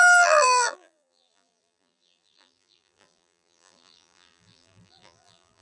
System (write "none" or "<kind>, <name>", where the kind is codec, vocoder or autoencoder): vocoder, BigVGAN v2